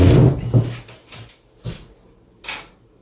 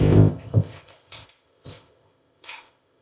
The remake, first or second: second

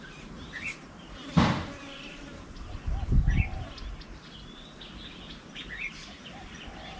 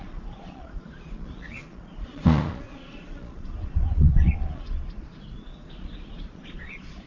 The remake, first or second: second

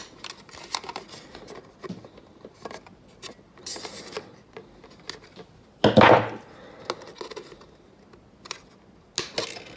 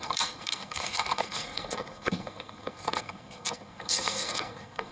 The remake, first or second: second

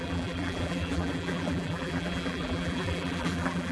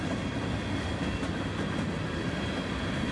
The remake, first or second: first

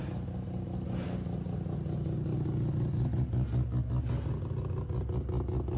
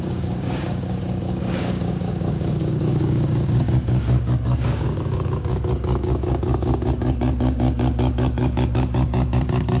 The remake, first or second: second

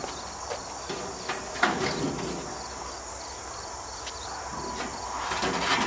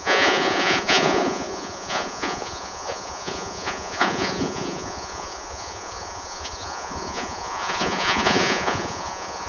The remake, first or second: second